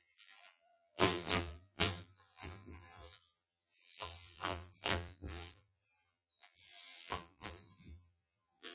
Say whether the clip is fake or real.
fake